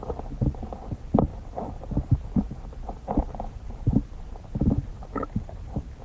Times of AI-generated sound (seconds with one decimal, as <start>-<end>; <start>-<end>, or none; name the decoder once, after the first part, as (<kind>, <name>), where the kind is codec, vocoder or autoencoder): 0.0-6.0 (vocoder, BigVGAN v2)